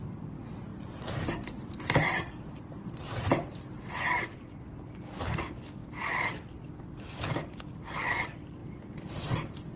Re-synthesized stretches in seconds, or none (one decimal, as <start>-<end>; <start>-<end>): 0.7-4.0; 8.6-9.3